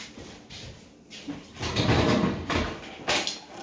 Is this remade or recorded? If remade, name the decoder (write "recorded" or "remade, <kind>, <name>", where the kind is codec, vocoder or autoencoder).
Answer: recorded